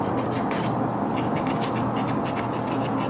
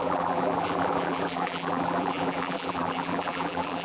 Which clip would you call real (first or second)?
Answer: first